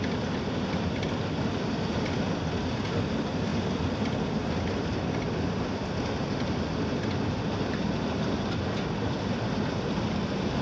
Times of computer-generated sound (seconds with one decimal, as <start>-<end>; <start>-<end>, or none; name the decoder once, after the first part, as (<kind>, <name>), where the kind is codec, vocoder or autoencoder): none